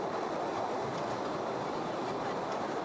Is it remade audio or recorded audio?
recorded